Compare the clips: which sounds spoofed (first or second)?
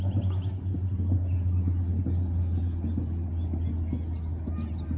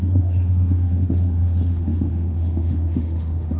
second